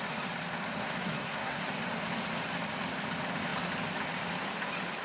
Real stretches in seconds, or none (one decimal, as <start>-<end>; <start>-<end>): 0.0-0.8; 1.6-5.0